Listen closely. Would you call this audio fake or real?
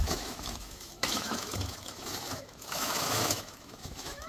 fake